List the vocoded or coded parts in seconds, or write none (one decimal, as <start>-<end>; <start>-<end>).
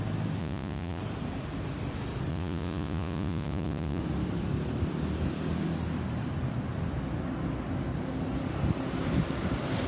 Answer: 0.4-1.0; 2.3-4.0